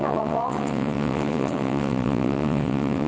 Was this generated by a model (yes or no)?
yes